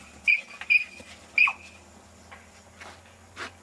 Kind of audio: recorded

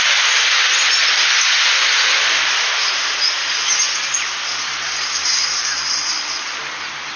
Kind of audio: recorded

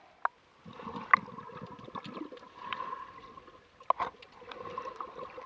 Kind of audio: recorded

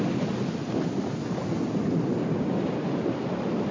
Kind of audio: recorded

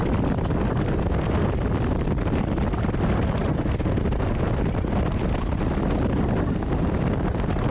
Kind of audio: recorded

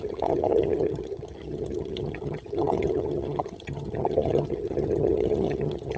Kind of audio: remade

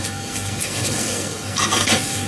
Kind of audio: remade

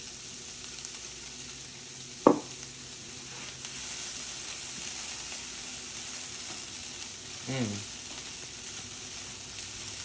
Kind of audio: recorded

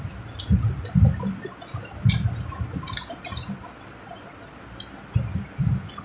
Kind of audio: recorded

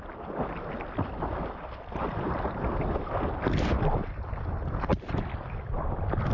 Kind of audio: recorded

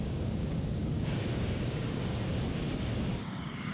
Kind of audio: remade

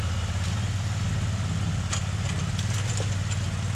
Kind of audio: recorded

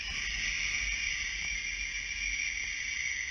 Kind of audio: recorded